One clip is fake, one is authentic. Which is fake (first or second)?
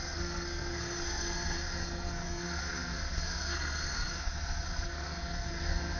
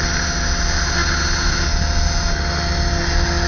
first